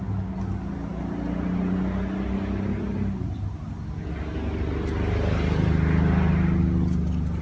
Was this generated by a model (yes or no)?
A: no